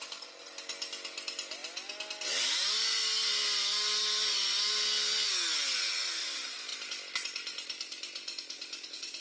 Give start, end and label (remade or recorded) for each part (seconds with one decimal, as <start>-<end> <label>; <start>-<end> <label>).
0.0-9.2 recorded